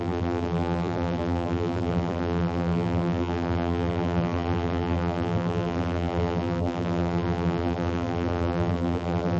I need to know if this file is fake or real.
fake